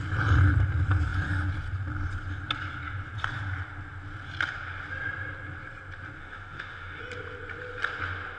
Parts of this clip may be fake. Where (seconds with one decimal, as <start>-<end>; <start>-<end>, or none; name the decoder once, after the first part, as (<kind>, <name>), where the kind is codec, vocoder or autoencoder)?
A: 6.2-7.0 (autoencoder, DAC-VAE)